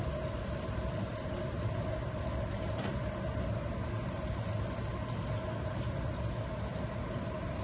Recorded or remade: recorded